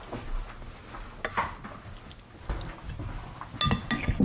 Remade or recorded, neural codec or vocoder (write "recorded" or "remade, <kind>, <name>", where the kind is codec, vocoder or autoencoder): recorded